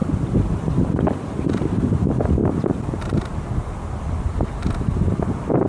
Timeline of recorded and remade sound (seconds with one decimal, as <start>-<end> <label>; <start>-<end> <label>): 0.0-5.7 recorded